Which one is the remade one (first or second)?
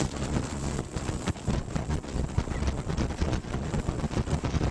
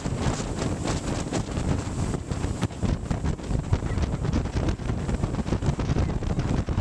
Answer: first